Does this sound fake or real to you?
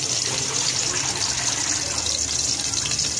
real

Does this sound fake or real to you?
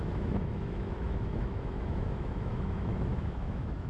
fake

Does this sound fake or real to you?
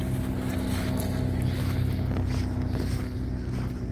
real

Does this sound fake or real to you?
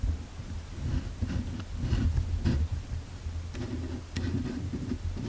real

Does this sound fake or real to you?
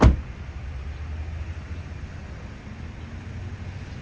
real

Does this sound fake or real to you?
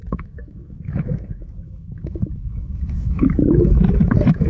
fake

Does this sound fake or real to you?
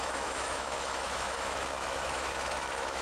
fake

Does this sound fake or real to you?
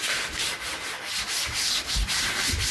real